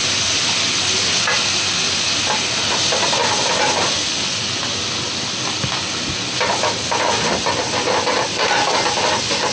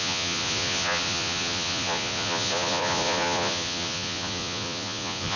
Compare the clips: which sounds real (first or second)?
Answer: first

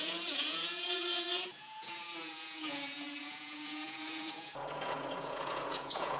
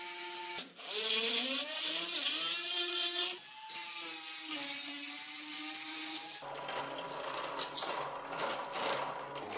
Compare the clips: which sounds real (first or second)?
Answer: second